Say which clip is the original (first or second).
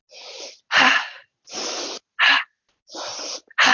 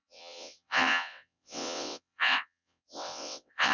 first